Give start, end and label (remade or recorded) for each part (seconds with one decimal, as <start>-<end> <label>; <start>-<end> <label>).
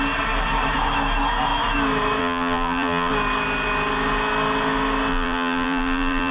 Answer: 0.0-2.2 recorded; 2.2-3.1 remade; 3.1-5.1 recorded; 5.1-6.3 remade